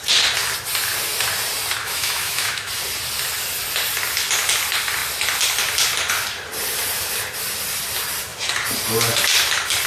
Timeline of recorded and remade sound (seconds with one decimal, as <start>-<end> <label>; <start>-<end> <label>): 0.0-1.8 recorded; 1.8-2.7 remade; 2.7-9.9 recorded